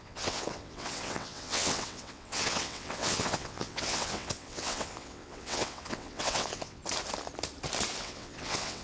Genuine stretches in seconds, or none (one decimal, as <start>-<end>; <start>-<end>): 6.8-8.0